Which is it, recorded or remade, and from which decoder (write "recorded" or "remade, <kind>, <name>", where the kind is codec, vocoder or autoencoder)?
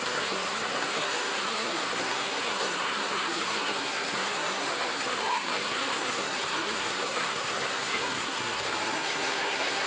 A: remade, codec, SNAC